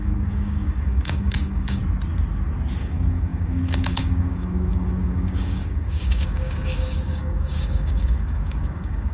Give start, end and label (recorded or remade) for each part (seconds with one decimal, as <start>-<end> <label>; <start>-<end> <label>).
0.0-1.8 remade; 1.8-2.8 recorded; 2.8-9.1 remade